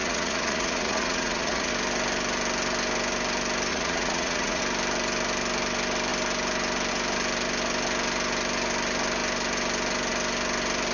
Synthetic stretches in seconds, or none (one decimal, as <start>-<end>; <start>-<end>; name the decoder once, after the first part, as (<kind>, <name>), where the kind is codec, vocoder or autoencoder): 0.0-1.7 (vocoder, Vocos); 3.7-4.6